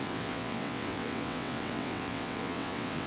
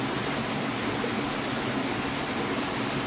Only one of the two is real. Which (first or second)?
second